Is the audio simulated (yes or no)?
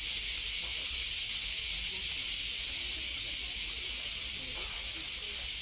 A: no